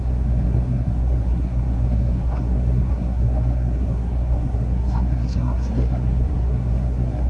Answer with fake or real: fake